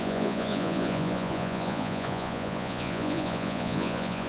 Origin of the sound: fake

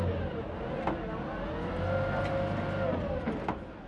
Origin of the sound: real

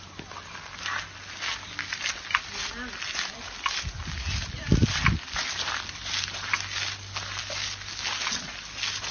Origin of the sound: real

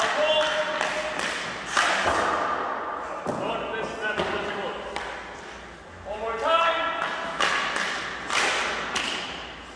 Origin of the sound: real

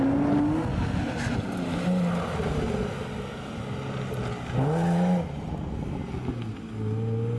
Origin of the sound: real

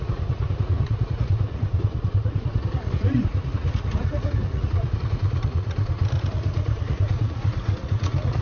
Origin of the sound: fake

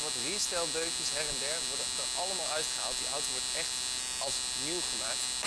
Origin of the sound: real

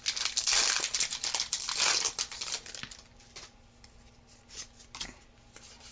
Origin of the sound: real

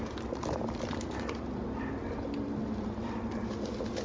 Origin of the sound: real